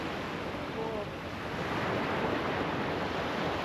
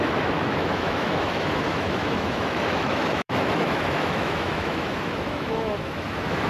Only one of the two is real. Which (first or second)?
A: first